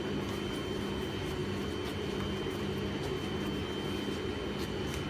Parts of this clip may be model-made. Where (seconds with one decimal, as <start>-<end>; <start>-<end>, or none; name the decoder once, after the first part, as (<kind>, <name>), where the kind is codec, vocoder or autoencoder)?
none